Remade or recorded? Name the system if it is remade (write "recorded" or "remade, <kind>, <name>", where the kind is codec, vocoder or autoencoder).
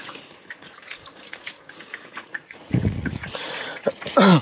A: remade, vocoder, Vocos